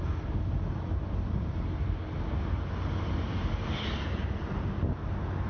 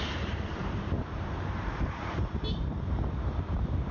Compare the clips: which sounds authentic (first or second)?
first